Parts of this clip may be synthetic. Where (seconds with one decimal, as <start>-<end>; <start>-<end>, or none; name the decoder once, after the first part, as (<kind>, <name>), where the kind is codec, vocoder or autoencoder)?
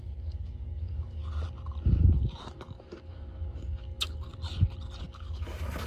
0.0-1.2 (codec, DAC); 2.4-4.3; 5.0-5.9